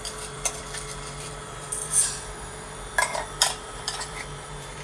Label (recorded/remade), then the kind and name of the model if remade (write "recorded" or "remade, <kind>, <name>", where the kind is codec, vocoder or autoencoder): remade, vocoder, BigVGAN v2